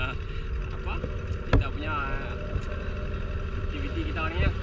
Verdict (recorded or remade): recorded